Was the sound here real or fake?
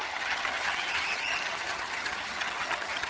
fake